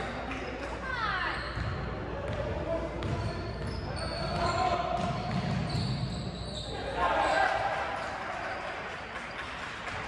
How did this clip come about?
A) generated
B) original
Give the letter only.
B